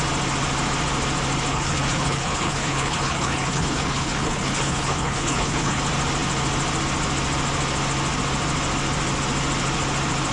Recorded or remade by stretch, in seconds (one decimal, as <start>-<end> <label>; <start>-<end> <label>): 0.0-1.5 recorded; 1.5-5.8 remade; 5.8-10.3 recorded